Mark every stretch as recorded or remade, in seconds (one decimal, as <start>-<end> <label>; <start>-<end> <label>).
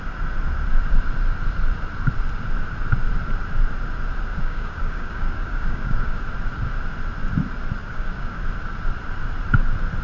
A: 0.0-4.3 recorded; 4.3-6.2 remade; 6.2-7.8 recorded; 7.8-8.4 remade; 8.4-10.0 recorded